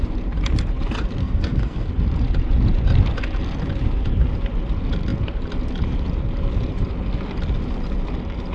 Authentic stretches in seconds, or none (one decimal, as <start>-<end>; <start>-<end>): 0.0-1.2; 1.9-8.5